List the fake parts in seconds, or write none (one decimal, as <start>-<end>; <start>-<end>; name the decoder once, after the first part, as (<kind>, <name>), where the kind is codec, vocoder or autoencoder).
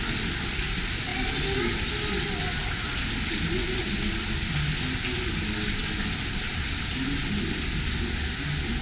none